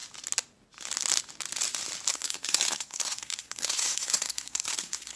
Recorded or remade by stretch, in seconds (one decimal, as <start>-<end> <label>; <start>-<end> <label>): 0.0-2.1 recorded; 2.1-5.2 remade